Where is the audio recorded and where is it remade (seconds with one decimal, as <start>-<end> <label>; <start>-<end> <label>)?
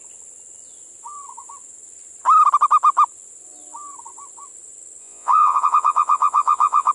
0.0-5.0 recorded; 5.0-6.9 remade